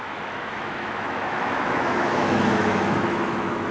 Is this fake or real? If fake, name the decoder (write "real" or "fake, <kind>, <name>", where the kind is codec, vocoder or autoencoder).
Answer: fake, autoencoder, DAC-VAE